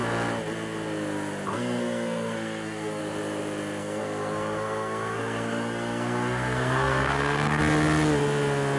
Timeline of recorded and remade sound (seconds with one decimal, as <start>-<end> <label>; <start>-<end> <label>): 0.0-1.5 recorded; 1.5-3.0 remade; 3.0-3.8 recorded; 3.8-7.6 remade; 7.6-8.8 recorded